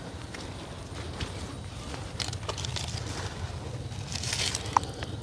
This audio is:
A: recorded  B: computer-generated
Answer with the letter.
A